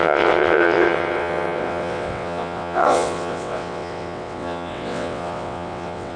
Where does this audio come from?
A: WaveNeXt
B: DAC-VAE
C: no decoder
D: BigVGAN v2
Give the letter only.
A